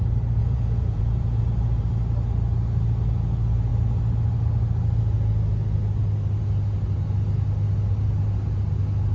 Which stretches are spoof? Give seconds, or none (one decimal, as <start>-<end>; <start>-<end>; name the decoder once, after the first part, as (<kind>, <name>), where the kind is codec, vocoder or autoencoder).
0.4-1.4 (vocoder, Vocos)